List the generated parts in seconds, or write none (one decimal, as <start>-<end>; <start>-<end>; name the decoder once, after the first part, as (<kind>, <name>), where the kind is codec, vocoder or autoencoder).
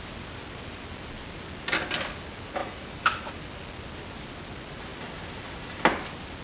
2.6-3.3 (autoencoder, DAC-VAE)